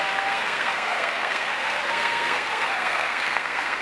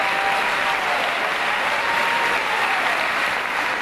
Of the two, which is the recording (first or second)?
second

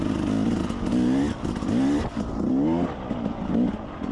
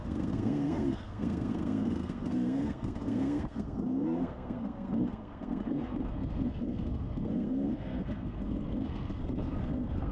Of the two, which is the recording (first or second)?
first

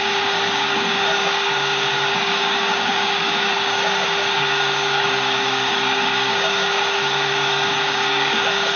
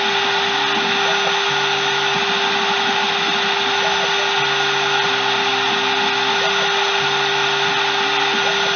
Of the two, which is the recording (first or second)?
second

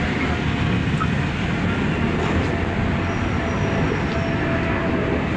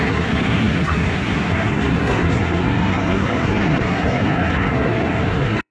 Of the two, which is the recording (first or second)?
first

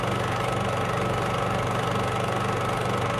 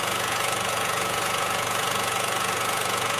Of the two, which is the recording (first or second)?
first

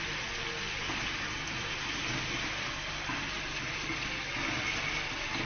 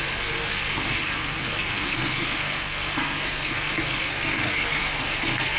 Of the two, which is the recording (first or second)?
first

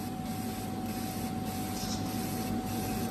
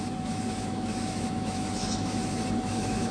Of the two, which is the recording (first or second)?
first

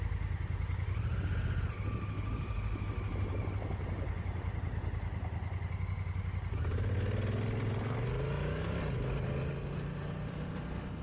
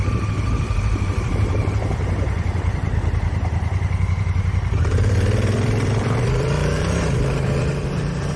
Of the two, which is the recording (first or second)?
first